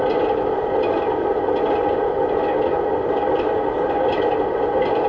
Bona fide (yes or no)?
yes